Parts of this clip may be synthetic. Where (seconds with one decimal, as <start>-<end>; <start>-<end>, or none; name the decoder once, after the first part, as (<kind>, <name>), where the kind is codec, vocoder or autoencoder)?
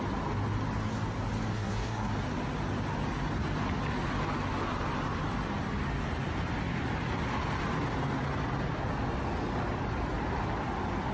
1.5-2.1 (codec, SNAC)